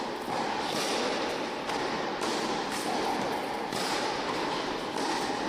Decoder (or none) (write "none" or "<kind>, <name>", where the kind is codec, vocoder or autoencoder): none